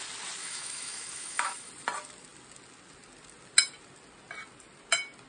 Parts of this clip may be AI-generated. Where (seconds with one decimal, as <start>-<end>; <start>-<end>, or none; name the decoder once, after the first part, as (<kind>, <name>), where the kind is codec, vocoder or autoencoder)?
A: 0.4-1.7 (autoencoder, DAC-VAE)